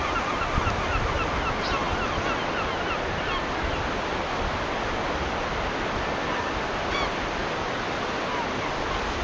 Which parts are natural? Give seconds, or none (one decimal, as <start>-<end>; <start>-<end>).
0.0-9.2